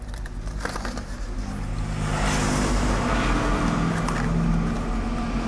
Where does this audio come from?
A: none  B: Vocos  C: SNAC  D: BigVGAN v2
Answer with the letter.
A